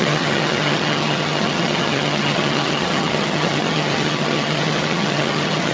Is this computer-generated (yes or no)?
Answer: yes